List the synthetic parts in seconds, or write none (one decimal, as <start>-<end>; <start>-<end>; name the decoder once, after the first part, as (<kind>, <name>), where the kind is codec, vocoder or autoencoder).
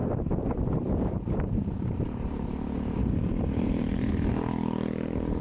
0.0-2.5 (vocoder, BigVGAN v2); 3.0-4.1